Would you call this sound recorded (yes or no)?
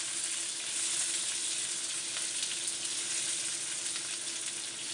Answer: yes